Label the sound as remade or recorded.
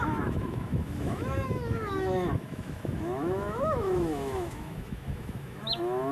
remade